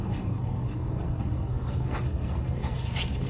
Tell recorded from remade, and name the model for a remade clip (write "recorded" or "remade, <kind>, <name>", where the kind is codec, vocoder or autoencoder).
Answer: remade, codec, SNAC